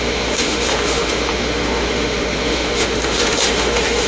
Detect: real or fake fake